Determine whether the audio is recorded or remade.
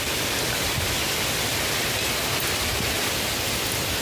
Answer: recorded